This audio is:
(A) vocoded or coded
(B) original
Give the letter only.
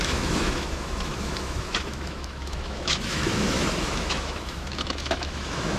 A